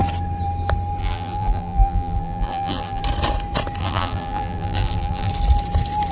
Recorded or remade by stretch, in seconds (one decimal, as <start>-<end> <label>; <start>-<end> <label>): 0.0-1.0 recorded; 1.0-3.0 remade; 3.0-3.8 recorded; 3.8-5.3 remade; 5.3-6.1 recorded